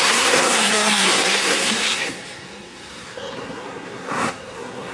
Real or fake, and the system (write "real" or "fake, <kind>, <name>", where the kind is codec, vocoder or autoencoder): fake, codec, SNAC